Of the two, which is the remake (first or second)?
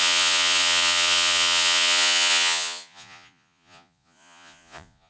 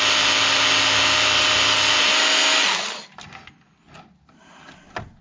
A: first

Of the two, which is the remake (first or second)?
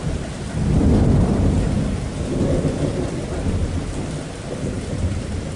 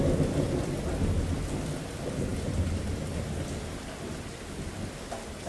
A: first